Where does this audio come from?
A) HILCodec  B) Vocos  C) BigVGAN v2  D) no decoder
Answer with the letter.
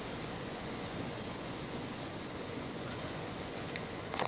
B